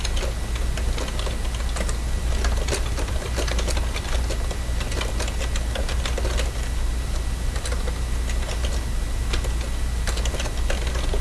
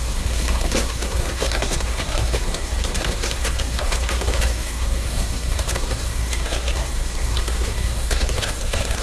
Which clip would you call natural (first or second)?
first